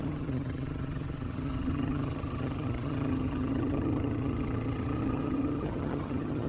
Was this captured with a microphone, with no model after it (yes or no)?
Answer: no